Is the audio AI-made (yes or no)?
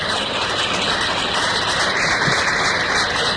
no